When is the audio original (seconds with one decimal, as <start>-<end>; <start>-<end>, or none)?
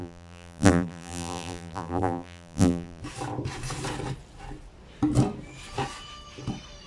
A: 3.0-6.9